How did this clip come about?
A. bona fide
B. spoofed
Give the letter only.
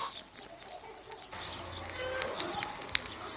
A